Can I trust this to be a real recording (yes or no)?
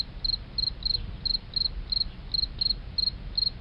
yes